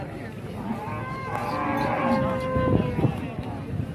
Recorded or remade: recorded